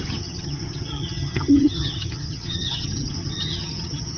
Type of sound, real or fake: fake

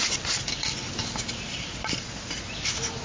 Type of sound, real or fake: real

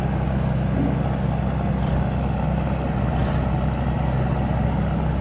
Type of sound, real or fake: real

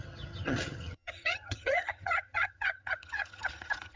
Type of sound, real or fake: fake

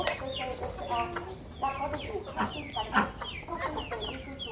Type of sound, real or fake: real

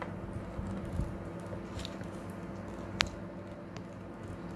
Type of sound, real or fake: real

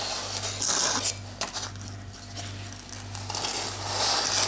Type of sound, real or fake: real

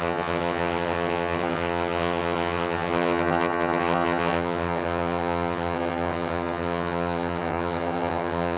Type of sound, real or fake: fake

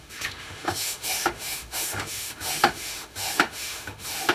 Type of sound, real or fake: fake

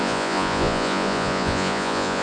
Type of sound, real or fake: fake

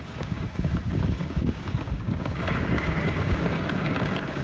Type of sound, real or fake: fake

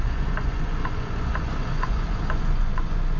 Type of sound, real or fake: fake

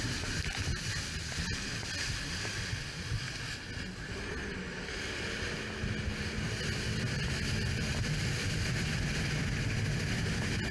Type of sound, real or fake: real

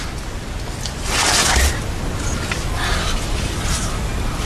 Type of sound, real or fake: real